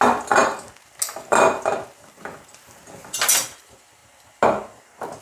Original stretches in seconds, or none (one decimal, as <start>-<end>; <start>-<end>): 0.0-5.2